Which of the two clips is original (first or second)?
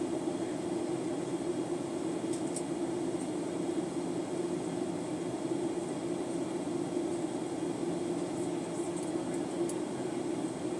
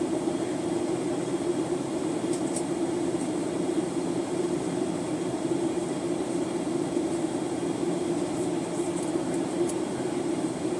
first